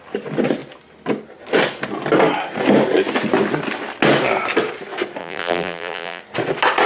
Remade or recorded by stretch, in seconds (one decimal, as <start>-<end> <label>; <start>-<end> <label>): 0.0-5.2 recorded; 5.2-6.2 remade; 6.2-6.9 recorded